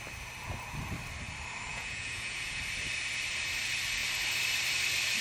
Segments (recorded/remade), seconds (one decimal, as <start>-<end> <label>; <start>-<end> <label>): 0.0-1.7 recorded; 1.7-2.6 remade; 2.6-5.2 recorded